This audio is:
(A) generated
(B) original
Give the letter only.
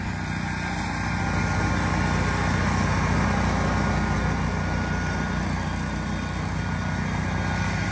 B